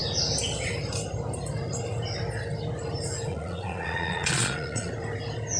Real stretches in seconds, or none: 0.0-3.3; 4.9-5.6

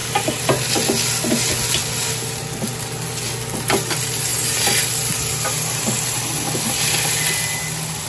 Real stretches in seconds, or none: 0.0-8.1

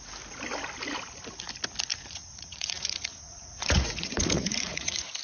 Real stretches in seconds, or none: 0.0-1.9

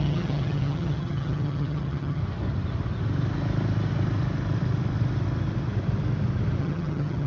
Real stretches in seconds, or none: 2.2-6.6

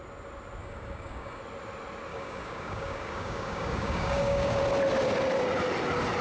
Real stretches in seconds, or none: 0.0-0.6; 1.4-2.1; 4.6-6.2

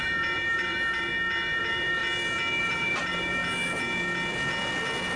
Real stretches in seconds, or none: 1.1-1.6; 2.0-2.6; 3.4-5.2

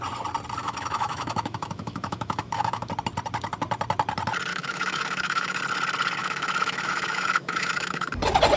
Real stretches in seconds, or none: 0.0-0.6; 2.9-4.5; 5.6-6.2; 8.1-8.6

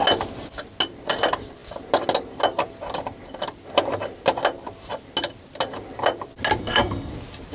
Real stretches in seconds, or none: 0.0-6.6; 7.1-7.5